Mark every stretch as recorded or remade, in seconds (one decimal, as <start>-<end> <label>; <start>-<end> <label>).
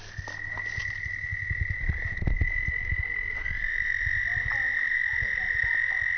0.0-6.2 recorded